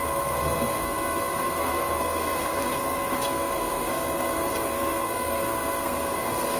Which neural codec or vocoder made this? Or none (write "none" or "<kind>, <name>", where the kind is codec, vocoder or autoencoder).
codec, SNAC